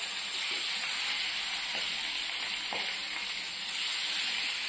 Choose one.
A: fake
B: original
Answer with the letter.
B